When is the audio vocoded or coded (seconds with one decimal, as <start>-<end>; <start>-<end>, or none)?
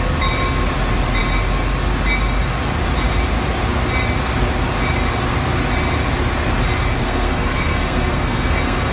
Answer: 7.0-8.9